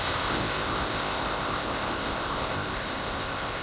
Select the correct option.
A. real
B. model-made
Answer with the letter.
B